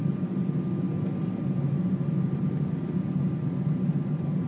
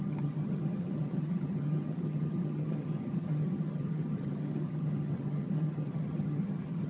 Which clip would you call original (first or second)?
first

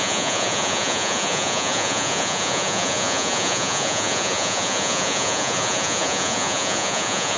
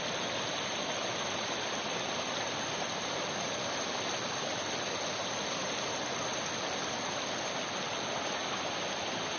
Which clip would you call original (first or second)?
second